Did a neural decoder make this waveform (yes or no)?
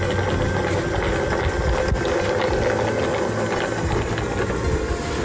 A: no